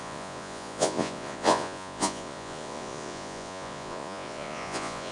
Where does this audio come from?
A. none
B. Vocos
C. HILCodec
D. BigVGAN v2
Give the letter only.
B